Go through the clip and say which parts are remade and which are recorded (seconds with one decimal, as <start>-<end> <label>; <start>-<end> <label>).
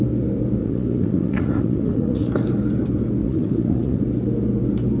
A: 0.0-0.6 recorded; 0.6-2.3 remade; 2.3-3.2 recorded; 3.2-4.0 remade; 4.0-5.0 recorded